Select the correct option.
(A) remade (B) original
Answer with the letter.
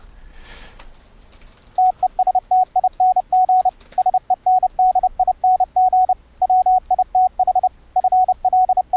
B